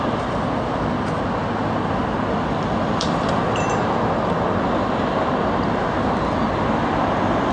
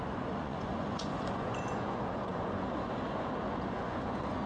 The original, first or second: first